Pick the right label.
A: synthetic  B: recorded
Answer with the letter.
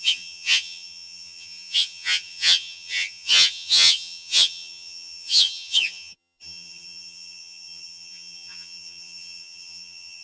A